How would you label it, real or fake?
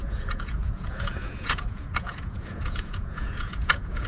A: fake